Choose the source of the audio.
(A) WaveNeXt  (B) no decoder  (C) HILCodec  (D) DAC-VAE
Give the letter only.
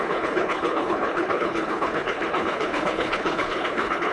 C